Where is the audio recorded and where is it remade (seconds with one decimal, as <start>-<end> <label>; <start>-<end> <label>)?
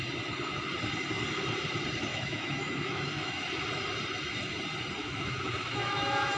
0.0-2.1 recorded; 2.1-3.6 remade; 3.6-5.0 recorded; 5.0-6.4 remade